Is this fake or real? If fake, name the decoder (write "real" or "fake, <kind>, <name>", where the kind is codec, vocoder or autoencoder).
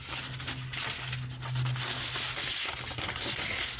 real